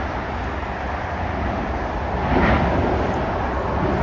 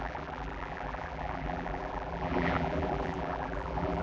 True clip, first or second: first